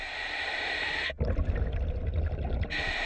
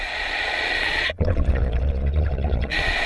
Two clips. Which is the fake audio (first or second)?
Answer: second